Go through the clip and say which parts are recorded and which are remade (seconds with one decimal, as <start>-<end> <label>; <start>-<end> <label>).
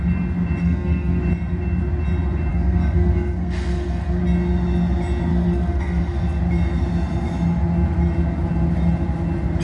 0.0-0.6 recorded; 0.6-1.2 remade; 1.2-2.5 recorded; 2.5-4.2 remade; 4.2-5.3 recorded; 5.3-6.4 remade; 6.4-9.6 recorded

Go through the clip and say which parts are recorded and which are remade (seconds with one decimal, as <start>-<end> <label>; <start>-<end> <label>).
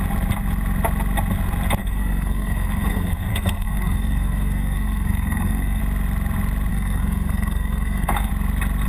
0.0-1.8 recorded; 1.8-5.8 remade; 5.8-6.7 recorded; 6.7-8.3 remade; 8.3-8.9 recorded